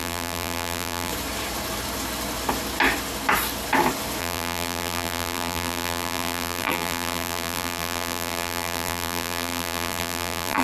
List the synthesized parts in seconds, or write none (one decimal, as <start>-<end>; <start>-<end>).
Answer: 0.0-1.1; 4.2-10.6